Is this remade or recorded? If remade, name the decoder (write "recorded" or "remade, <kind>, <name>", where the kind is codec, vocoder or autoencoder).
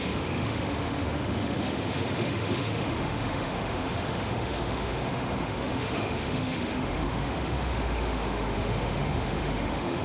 remade, autoencoder, DAC-VAE